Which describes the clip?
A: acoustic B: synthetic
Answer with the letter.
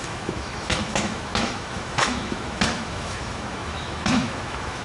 B